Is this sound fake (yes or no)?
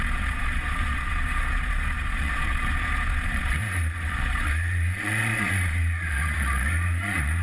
yes